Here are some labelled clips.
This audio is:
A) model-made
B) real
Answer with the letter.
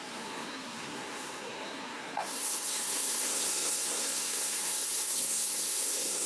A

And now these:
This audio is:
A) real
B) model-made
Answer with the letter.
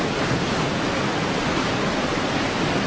A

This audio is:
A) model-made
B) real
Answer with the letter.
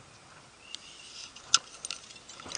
B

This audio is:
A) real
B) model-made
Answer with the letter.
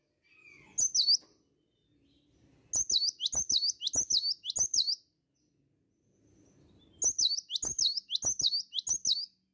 A